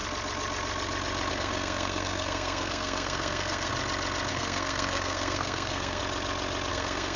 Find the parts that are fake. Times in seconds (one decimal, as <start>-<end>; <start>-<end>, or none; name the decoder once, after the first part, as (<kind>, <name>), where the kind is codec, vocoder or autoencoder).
1.3-3.7 (codec, SNAC); 4.3-6.0; 6.7-7.2